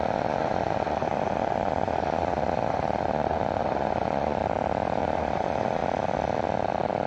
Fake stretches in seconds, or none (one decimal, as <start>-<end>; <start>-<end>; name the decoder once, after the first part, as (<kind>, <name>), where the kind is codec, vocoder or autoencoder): 0.0-4.4 (vocoder, Vocos); 5.0-5.8